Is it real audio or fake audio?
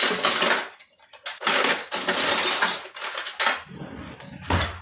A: real